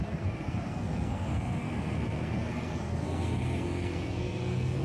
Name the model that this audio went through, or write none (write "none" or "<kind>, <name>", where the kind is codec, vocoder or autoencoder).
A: codec, SNAC